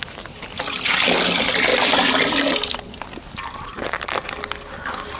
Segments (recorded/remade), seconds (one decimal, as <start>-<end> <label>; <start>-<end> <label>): 0.0-5.2 recorded